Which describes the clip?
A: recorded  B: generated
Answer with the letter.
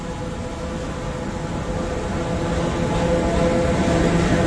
A